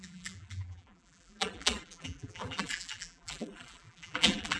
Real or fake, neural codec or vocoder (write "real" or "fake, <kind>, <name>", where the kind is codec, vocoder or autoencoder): fake, vocoder, BigVGAN v2